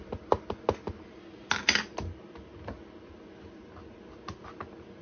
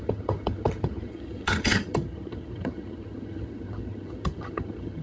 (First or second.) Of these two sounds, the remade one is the second